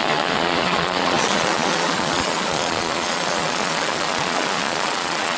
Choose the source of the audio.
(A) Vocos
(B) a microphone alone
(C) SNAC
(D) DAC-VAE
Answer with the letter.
A